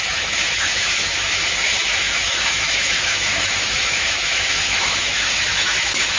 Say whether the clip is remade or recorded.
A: remade